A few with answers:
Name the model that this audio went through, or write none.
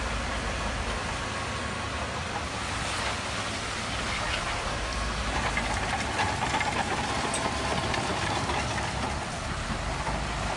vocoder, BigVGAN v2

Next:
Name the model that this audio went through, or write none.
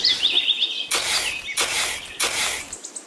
none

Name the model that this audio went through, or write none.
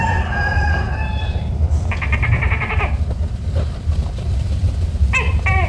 vocoder, BigVGAN v2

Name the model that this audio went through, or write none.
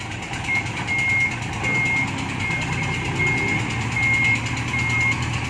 none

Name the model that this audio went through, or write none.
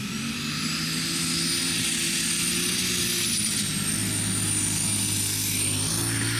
none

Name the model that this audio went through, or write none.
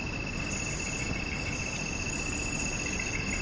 none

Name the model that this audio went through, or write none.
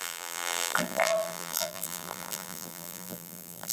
vocoder, BigVGAN v2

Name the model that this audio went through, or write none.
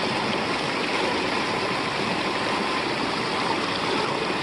none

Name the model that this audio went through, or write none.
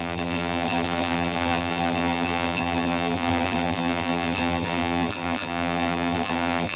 vocoder, BigVGAN v2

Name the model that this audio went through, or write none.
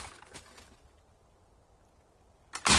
none